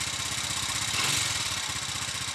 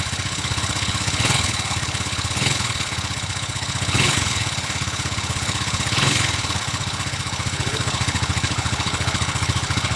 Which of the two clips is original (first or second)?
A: first